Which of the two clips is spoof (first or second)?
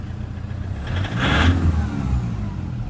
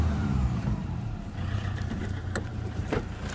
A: second